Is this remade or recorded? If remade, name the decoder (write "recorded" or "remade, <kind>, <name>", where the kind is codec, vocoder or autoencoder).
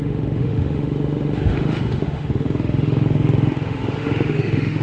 remade, autoencoder, DAC-VAE